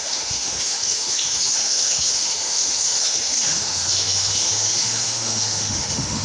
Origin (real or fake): fake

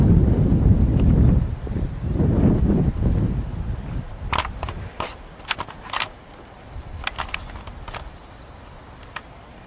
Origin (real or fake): real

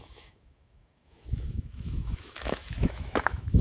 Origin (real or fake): fake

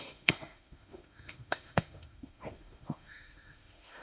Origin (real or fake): fake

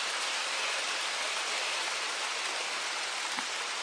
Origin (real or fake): real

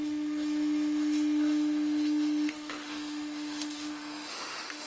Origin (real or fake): fake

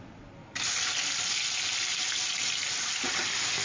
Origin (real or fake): real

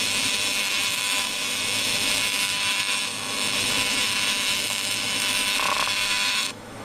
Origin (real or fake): fake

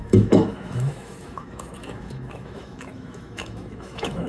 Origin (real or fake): fake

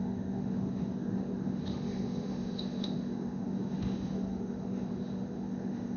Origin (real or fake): fake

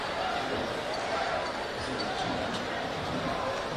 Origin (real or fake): real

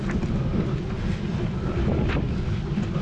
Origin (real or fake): real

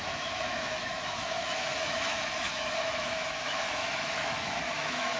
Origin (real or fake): fake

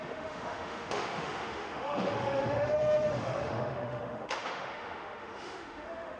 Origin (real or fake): fake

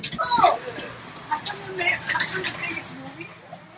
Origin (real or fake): real